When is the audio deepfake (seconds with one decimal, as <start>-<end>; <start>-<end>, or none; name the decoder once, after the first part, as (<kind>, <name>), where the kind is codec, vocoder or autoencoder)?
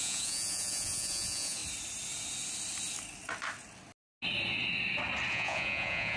0.0-1.6 (vocoder, Vocos); 5.3-6.2